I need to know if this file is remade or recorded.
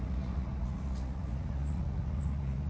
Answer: remade